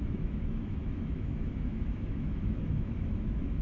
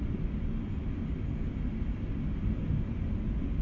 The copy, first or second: first